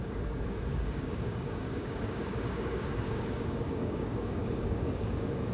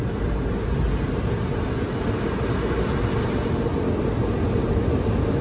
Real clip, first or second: second